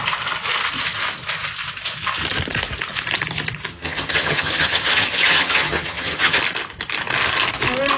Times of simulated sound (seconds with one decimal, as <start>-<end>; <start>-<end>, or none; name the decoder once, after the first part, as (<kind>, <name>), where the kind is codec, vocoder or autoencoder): 3.7-6.4 (vocoder, HiFi-GAN)